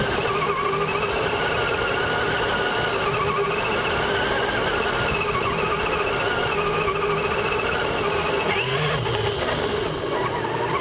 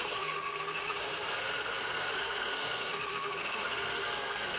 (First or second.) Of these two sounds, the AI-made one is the second